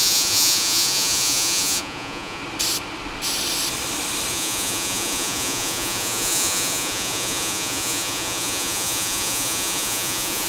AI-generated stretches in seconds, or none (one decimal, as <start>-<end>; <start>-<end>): 0.0-2.4; 4.3-10.5